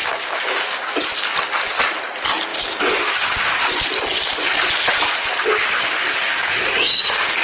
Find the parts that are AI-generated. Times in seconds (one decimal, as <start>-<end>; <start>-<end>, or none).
0.0-0.9; 2.5-3.6; 5.4-7.4